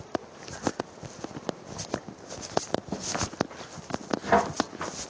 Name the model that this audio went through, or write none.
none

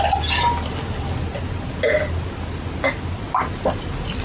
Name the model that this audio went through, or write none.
none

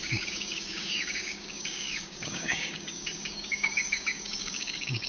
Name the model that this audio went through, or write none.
codec, DAC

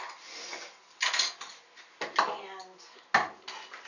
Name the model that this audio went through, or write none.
none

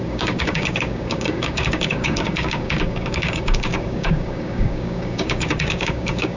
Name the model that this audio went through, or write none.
codec, DAC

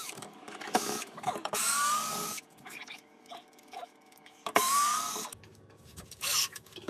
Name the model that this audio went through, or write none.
codec, DAC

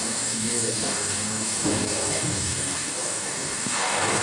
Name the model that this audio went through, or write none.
codec, DAC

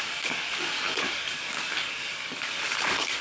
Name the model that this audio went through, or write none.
codec, DAC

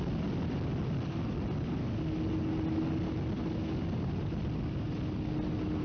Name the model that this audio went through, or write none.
none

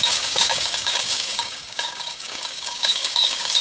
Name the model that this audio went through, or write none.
codec, DAC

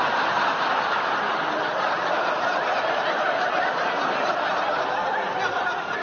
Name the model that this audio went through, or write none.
none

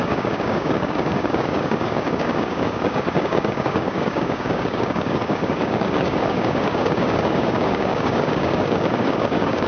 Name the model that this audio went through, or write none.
codec, DAC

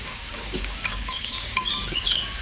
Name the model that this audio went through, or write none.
codec, DAC